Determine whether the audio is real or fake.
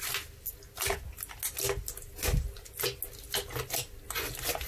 real